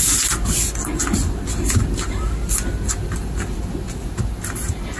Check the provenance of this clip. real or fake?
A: real